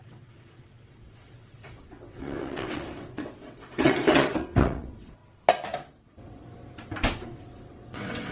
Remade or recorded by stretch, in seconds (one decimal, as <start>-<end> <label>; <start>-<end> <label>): 0.0-5.2 remade; 5.2-6.0 recorded; 6.0-6.4 remade; 6.4-7.4 recorded; 7.4-8.3 remade